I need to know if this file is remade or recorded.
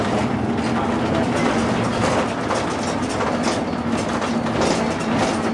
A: recorded